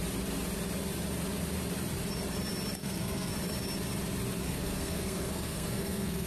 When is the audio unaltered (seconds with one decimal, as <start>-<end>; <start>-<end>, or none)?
0.0-2.8; 3.3-4.4